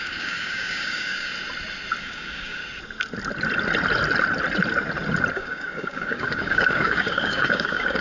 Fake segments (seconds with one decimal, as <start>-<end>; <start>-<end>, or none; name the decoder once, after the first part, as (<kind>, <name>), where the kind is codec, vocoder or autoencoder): 0.0-1.3 (codec, DAC); 2.0-2.6; 5.3-8.0